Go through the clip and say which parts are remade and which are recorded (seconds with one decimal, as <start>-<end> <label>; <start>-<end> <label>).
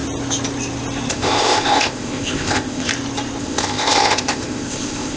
0.0-1.1 recorded; 1.1-2.9 remade; 2.9-3.4 recorded; 3.4-5.2 remade